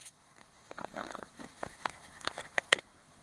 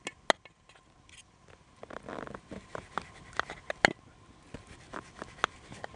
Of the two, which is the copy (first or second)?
first